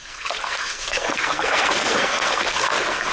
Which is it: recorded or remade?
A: remade